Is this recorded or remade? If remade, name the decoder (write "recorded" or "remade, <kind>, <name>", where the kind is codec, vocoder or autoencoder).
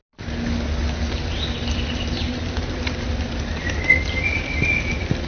recorded